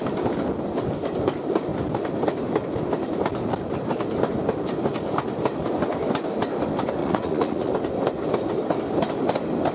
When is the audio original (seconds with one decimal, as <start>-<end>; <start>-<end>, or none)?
0.0-7.0; 7.7-9.7